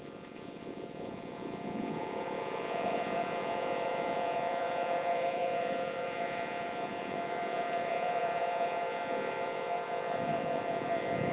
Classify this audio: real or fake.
fake